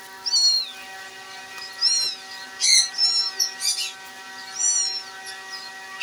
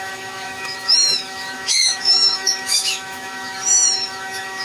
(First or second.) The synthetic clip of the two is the second